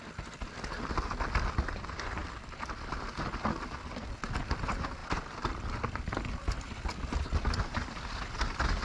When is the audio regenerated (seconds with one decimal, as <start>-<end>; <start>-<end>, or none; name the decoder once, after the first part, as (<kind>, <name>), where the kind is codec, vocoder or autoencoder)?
2.2-2.9 (vocoder, BigVGAN v2)